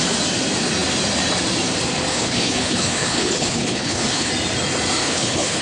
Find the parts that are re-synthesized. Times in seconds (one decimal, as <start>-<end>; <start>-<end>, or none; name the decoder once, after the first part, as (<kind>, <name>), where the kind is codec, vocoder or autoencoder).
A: 2.1-4.3 (codec, HILCodec); 5.0-5.6